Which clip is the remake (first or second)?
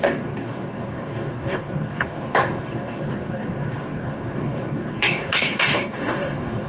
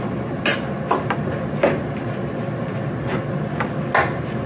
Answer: first